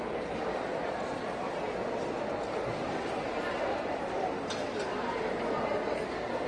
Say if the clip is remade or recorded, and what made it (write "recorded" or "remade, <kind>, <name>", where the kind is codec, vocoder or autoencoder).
recorded